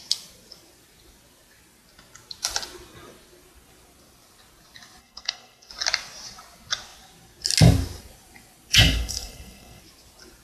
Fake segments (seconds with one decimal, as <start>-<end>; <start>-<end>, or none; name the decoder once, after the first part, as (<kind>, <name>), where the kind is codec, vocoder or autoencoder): 5.0-5.7 (codec, SNAC); 8.7-9.8